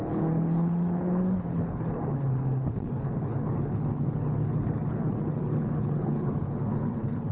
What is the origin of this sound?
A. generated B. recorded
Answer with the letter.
A